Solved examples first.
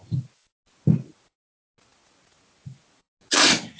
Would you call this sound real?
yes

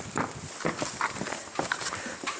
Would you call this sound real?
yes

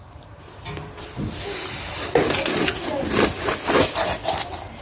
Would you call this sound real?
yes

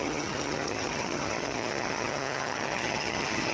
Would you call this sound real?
no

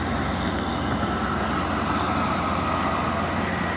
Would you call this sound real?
yes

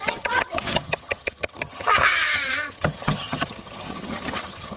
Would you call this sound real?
no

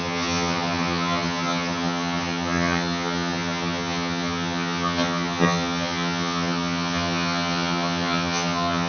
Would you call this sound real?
no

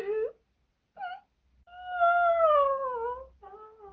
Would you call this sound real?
yes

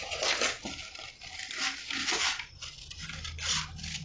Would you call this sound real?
yes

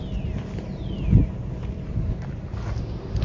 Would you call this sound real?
yes